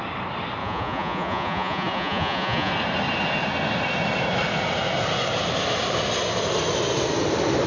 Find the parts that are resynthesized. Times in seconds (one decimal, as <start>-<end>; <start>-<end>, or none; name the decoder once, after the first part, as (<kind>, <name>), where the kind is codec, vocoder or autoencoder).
0.6-2.7 (vocoder, Vocos)